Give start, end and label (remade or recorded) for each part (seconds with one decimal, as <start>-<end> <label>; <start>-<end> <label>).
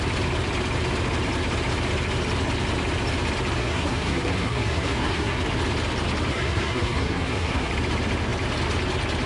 0.0-3.6 recorded; 3.6-5.4 remade; 5.4-6.3 recorded; 6.3-7.7 remade; 7.7-9.3 recorded